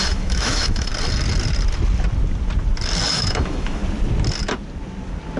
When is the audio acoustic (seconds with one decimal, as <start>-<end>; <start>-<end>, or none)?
0.9-3.1; 3.8-5.4